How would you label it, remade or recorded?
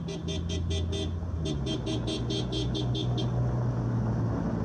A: recorded